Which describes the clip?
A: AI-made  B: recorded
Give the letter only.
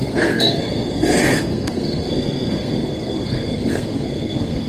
A